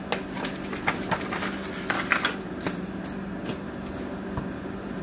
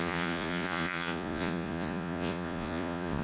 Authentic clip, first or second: first